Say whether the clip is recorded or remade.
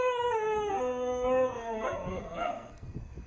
remade